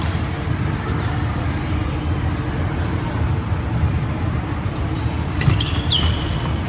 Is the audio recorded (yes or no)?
yes